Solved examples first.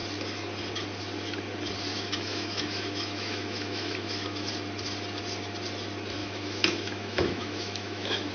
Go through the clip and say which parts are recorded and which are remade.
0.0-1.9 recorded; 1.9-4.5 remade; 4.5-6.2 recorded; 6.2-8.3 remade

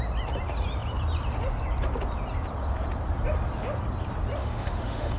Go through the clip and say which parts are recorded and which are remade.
0.0-4.4 recorded; 4.4-5.2 remade

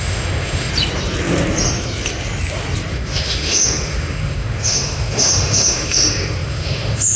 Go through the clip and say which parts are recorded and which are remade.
0.0-0.7 remade; 0.7-2.9 recorded; 2.9-7.2 remade

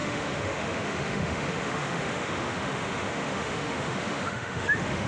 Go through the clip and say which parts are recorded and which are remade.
0.0-5.1 remade

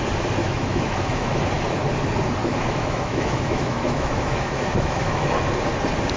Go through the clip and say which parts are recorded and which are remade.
0.0-0.4 recorded; 0.4-1.4 remade; 1.4-2.4 recorded; 2.4-5.4 remade; 5.4-6.2 recorded

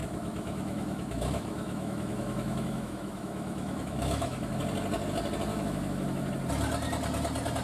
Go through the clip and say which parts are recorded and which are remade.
0.0-4.6 remade; 4.6-5.5 recorded; 5.5-6.3 remade; 6.3-7.6 recorded